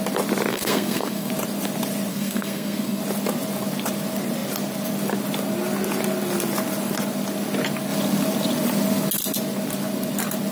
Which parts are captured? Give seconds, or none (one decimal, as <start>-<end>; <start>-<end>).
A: 0.0-0.5; 1.3-2.1; 3.0-10.5